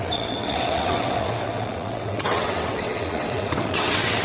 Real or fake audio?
fake